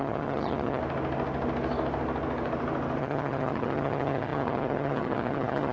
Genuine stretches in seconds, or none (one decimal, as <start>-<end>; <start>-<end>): 0.8-3.0